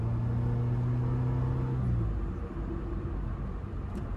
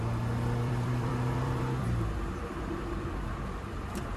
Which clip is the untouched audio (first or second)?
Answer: first